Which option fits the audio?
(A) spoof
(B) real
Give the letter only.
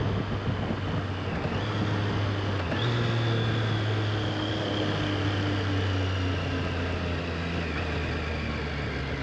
B